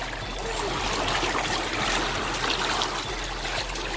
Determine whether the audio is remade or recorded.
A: recorded